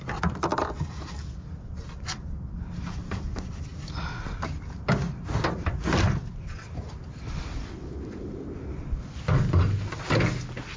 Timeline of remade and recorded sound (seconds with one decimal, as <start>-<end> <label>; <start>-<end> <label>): 0.0-10.8 recorded